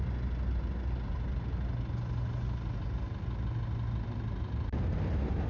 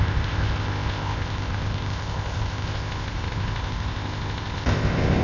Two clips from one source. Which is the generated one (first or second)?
second